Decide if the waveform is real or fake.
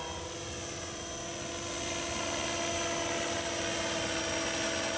real